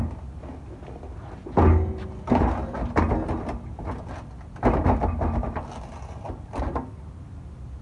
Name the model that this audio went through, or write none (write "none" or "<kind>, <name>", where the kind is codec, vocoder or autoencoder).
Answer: none